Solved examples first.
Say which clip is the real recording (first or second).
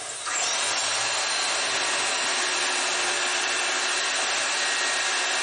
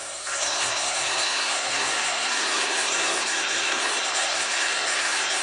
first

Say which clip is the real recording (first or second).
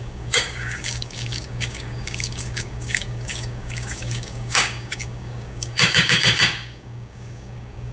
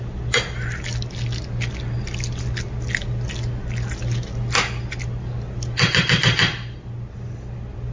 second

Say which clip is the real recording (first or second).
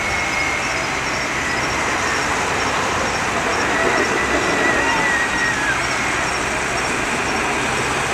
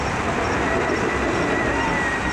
first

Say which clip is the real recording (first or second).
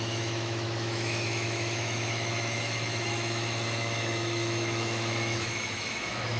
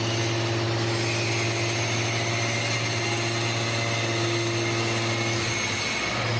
second